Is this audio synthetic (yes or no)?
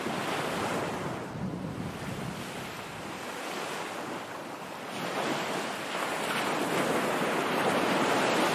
no